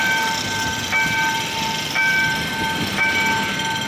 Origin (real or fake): fake